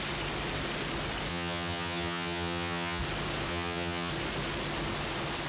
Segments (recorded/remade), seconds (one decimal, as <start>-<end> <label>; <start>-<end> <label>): 0.0-1.3 recorded; 1.3-3.0 remade; 3.0-3.5 recorded; 3.5-4.1 remade; 4.1-5.5 recorded